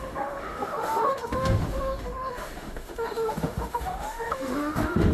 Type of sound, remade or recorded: remade